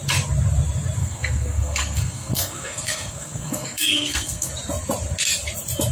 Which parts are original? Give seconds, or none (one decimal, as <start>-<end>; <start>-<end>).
0.0-1.0; 4.5-5.9